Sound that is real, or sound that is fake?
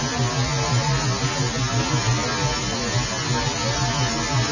real